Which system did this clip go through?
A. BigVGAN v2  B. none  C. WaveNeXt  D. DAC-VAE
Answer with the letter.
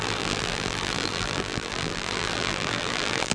A